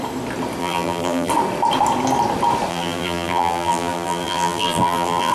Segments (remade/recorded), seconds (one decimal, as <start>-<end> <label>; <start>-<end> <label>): 0.0-0.6 recorded; 0.6-1.3 remade; 1.3-2.7 recorded; 2.7-5.3 remade